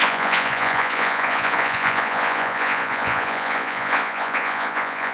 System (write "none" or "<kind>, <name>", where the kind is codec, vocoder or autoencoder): vocoder, Vocos